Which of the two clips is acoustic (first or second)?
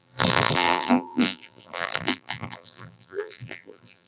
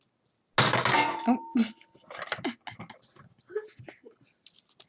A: second